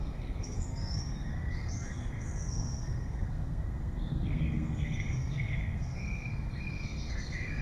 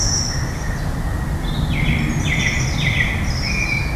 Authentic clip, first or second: second